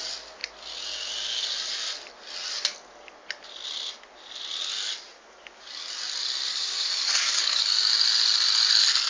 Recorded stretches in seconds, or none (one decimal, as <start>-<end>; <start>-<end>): 0.0-6.5; 7.7-9.1